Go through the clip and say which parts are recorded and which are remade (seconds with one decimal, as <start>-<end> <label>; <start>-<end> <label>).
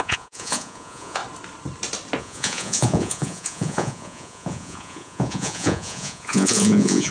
0.0-1.2 remade; 1.2-2.2 recorded; 2.2-7.1 remade